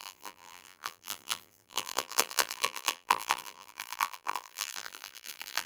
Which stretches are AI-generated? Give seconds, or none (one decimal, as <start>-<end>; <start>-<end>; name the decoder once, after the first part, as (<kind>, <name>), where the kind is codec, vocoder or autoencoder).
0.0-5.7 (vocoder, BigVGAN v2)